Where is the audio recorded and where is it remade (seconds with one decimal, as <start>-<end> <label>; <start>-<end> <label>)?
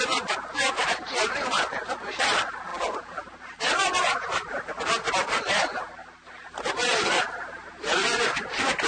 0.0-8.9 recorded